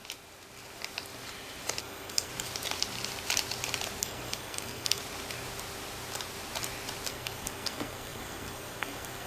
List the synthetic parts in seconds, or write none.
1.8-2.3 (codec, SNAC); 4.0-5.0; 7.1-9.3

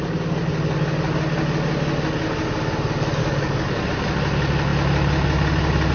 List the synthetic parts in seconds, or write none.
3.2-3.8 (codec, DAC)

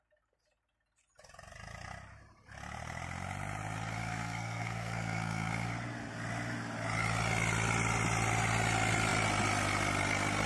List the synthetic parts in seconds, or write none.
4.0-5.5 (codec, SNAC)

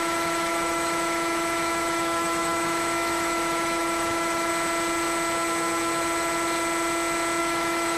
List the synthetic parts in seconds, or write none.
0.0-4.5 (autoencoder, DAC-VAE); 7.4-8.0